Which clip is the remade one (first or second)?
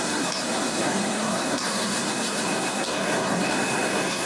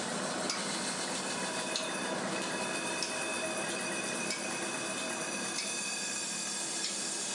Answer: first